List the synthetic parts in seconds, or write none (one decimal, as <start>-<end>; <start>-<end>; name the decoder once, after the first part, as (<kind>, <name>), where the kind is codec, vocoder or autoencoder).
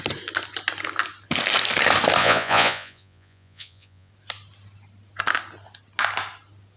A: 2.2-4.1 (vocoder, Vocos)